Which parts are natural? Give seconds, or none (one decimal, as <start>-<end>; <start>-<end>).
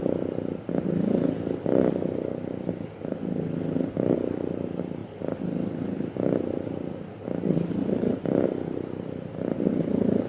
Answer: 0.0-10.3